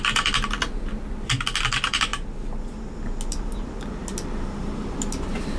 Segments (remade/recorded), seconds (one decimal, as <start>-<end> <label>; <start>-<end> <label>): 0.0-5.6 recorded